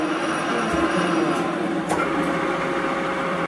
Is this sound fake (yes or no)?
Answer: yes